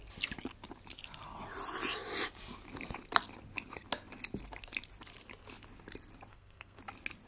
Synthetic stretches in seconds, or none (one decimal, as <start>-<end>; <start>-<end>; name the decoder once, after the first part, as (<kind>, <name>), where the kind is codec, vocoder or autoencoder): 6.3-6.8 (codec, SNAC)